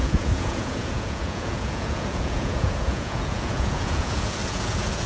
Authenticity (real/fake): fake